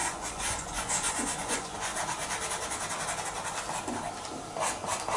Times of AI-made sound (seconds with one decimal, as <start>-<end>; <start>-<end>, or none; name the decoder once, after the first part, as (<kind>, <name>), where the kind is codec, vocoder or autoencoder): 0.0-1.9 (vocoder, Vocos)